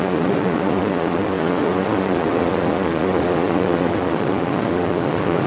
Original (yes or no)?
no